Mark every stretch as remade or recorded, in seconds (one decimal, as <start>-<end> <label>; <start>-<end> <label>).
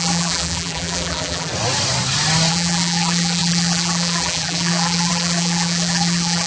0.0-1.5 remade; 1.5-2.5 recorded; 2.5-6.5 remade